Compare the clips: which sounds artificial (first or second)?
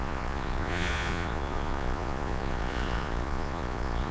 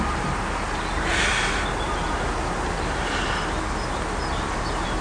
first